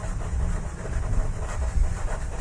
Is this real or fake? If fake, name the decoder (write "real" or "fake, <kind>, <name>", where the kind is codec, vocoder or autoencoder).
fake, vocoder, BigVGAN v2